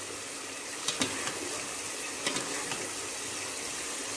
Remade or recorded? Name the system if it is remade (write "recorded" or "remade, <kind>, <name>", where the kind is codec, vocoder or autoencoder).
recorded